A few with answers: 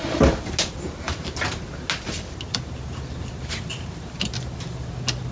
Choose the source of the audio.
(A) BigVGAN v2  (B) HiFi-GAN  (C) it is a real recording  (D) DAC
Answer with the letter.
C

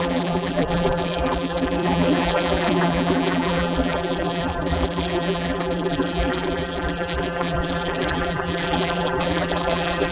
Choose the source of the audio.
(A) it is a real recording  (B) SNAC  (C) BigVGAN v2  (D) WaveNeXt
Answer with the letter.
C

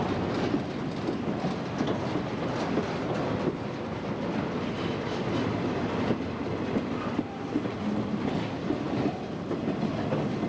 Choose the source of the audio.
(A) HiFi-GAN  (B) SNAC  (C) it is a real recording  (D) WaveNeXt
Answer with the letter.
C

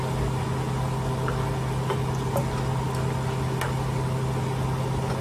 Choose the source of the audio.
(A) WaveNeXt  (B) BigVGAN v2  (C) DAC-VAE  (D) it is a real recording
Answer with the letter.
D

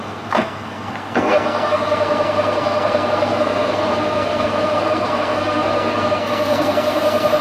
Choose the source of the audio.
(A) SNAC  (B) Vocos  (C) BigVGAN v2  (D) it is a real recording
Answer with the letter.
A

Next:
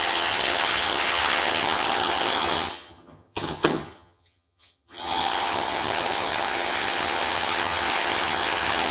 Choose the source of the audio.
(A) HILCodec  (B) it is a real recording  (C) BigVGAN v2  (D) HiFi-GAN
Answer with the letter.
D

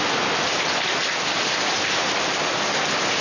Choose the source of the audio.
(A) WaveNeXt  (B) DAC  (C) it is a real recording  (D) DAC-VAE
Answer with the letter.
C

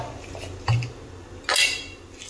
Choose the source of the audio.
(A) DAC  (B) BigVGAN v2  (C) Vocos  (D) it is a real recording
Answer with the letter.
D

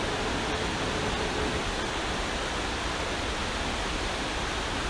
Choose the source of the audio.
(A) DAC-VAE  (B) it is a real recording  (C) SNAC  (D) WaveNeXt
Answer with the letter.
B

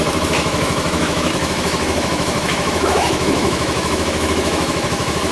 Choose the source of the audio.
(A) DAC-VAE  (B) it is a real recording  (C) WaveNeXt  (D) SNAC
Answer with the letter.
A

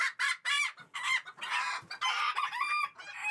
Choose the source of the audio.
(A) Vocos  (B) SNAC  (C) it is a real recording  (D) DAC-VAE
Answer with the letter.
C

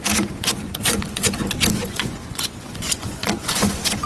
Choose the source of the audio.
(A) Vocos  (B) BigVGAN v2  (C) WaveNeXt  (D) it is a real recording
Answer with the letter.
A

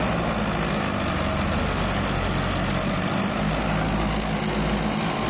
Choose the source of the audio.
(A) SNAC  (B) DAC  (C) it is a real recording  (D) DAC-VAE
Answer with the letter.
C